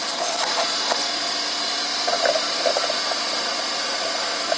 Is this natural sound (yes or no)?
yes